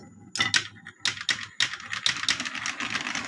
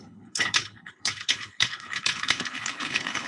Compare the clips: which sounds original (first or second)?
first